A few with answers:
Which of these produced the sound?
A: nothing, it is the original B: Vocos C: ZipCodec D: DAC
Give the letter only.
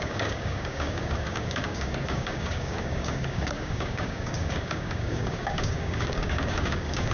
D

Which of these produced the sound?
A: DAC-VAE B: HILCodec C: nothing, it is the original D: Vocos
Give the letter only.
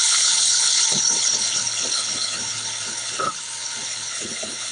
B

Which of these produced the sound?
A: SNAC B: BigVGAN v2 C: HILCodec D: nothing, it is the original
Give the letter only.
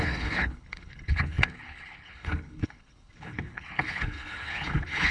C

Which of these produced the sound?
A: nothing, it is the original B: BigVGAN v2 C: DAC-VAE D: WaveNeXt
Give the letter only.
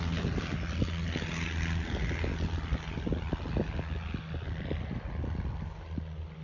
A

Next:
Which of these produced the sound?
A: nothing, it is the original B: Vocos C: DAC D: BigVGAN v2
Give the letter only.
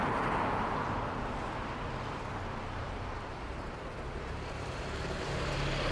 D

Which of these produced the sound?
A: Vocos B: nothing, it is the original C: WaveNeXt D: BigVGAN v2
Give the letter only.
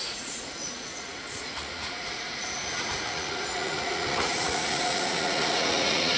A